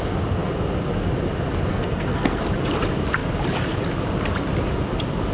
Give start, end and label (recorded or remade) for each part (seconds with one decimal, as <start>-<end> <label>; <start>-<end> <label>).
0.0-1.7 recorded; 1.7-2.4 remade; 2.4-5.3 recorded